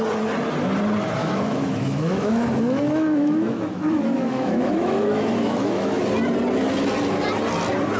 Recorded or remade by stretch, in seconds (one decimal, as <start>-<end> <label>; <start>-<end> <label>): 0.0-1.2 recorded; 1.2-6.0 remade; 6.0-8.0 recorded